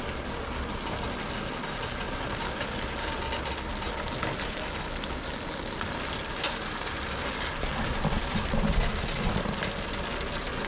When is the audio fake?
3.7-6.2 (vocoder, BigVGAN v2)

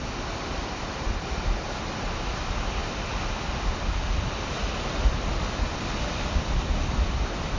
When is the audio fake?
none

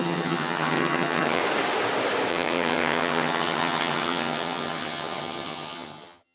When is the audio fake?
0.0-1.4 (vocoder, HiFi-GAN); 2.3-6.3

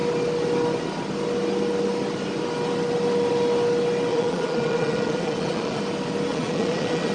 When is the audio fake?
4.1-5.8 (vocoder, Vocos); 6.3-7.1

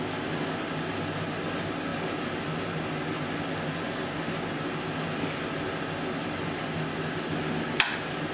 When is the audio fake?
none

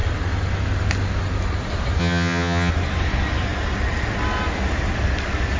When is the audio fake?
2.0-2.7 (vocoder, HiFi-GAN)

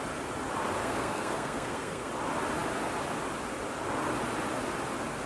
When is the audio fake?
0.8-2.1 (codec, SNAC)

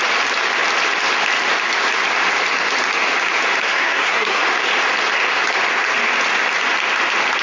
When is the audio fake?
3.6-4.4 (codec, SNAC)